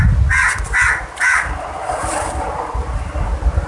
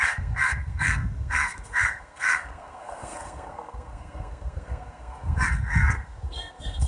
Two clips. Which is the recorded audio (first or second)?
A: first